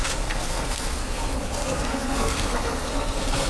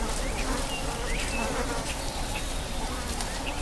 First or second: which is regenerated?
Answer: first